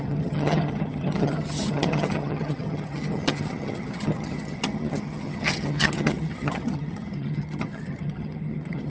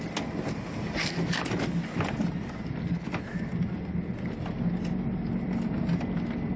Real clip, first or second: second